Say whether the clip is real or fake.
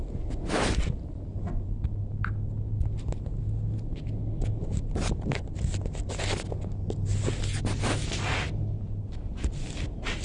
real